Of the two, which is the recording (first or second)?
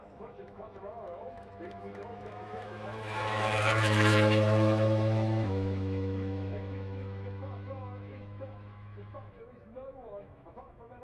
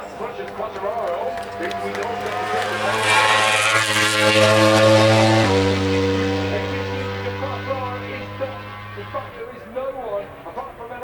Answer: second